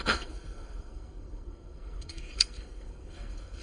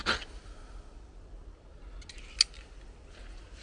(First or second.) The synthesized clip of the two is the first